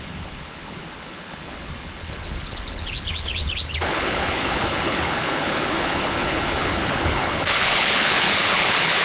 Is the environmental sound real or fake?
fake